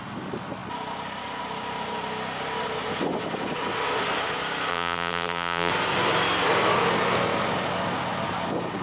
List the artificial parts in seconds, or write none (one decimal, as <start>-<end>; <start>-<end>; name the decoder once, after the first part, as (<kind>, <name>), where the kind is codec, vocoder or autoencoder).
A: 4.7-5.7 (vocoder, BigVGAN v2)